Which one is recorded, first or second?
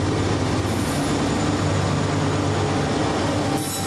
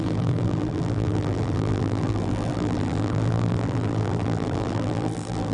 first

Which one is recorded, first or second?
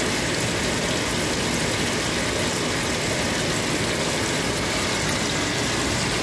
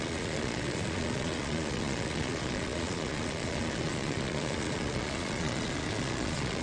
first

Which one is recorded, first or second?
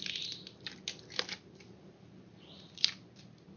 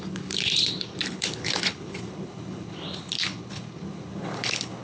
first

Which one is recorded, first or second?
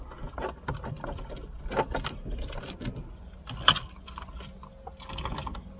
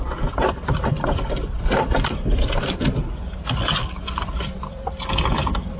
first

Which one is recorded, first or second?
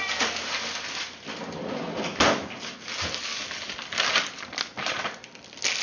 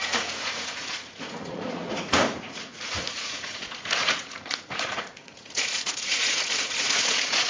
first